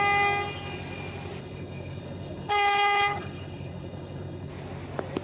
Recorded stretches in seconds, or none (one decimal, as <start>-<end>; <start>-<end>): 0.0-1.4; 4.5-5.2